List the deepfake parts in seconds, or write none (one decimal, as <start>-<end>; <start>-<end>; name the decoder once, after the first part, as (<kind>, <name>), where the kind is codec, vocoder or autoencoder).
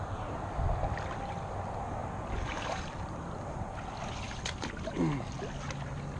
2.0-3.6 (vocoder, BigVGAN v2)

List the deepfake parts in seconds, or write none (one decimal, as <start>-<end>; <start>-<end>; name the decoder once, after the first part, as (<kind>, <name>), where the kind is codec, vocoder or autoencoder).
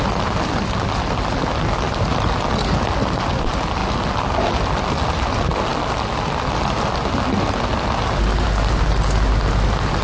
none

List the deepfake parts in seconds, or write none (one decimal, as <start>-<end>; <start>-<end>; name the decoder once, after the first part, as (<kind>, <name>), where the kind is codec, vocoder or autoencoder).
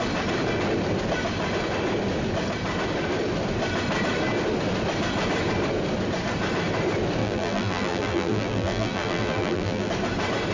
7.2-9.9 (vocoder, BigVGAN v2)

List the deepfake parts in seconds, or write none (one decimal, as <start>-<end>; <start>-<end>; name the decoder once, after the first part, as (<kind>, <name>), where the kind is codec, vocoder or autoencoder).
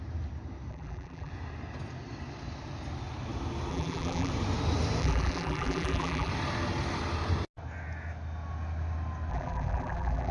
0.7-1.3 (vocoder, BigVGAN v2); 3.7-4.3; 5.0-6.3; 9.3-10.3